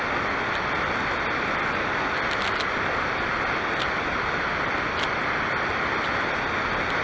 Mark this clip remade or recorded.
recorded